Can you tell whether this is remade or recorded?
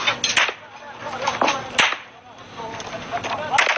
recorded